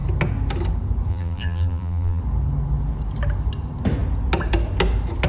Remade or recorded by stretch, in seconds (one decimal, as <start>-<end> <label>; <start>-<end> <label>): 0.0-1.1 recorded; 1.1-2.2 remade; 2.2-5.3 recorded